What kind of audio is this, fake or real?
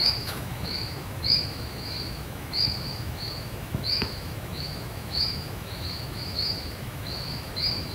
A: fake